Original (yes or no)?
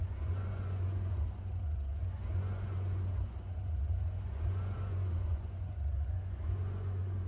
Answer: no